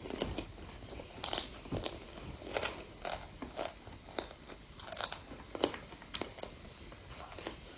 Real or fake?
real